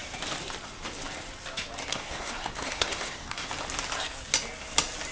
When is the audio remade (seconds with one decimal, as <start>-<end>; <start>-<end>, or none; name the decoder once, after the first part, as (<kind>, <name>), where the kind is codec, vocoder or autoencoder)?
1.9-3.5 (codec, SNAC)

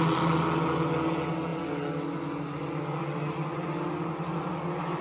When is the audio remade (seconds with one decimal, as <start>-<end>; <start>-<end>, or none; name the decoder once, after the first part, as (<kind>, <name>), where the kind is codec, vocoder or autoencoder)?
none